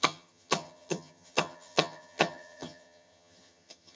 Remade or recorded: remade